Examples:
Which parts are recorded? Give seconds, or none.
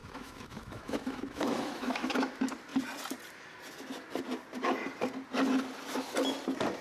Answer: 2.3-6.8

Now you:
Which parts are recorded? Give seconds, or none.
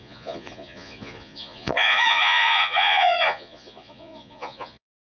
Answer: none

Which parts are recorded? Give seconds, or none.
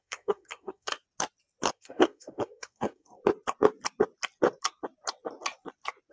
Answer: 0.9-1.7; 3.2-6.1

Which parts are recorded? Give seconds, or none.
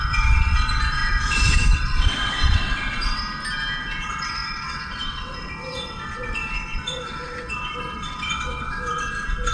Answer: 3.2-3.8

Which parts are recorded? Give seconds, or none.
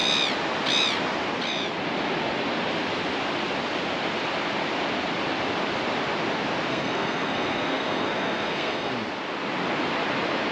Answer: 0.0-6.7; 8.9-10.5